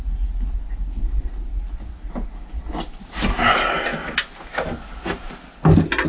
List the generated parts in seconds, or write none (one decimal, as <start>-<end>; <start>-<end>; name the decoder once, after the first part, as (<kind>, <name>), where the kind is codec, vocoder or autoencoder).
none